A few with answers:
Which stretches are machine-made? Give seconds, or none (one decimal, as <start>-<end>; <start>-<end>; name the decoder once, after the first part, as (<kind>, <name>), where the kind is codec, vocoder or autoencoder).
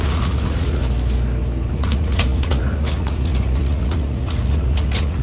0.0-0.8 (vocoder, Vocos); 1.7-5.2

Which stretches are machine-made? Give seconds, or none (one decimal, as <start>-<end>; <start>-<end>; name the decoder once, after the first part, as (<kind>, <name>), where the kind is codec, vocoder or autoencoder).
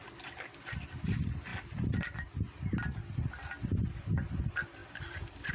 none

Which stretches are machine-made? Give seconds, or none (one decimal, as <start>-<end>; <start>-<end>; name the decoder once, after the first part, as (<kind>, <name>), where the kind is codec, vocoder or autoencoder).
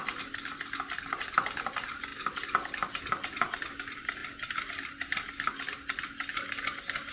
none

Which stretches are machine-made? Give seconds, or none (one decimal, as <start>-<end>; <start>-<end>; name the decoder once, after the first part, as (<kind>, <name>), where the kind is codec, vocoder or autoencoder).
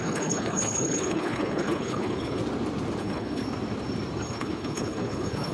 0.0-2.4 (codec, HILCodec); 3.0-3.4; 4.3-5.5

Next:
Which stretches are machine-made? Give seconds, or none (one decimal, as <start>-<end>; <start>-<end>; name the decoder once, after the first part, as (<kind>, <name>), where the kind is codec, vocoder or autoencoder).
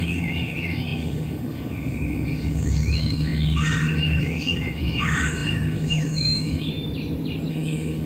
0.0-6.7 (autoencoder, DAC-VAE); 7.5-8.1